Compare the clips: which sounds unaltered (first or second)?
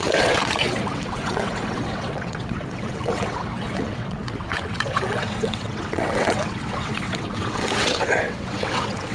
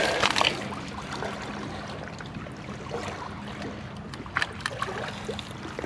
second